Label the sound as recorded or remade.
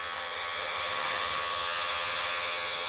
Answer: remade